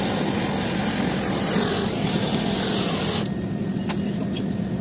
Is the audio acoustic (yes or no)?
yes